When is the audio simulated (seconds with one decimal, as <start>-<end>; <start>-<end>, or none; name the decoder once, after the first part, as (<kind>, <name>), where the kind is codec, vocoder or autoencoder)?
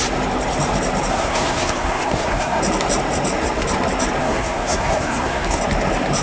1.1-2.6 (codec, SNAC); 4.2-5.6